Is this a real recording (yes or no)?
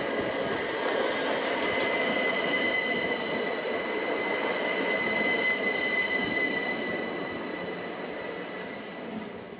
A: yes